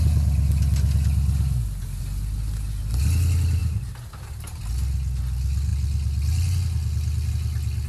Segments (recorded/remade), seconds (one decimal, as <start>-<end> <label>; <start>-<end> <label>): 0.0-3.6 recorded; 3.6-4.6 remade; 4.6-7.9 recorded